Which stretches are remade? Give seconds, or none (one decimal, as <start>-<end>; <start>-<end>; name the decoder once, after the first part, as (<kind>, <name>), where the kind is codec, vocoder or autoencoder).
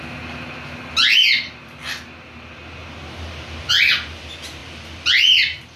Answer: none